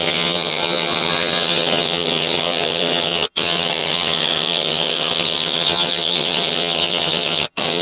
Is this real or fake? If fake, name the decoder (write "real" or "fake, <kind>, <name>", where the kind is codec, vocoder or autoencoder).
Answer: fake, vocoder, HiFi-GAN